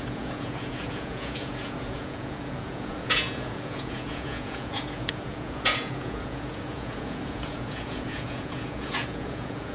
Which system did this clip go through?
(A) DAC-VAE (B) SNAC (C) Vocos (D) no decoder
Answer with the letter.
C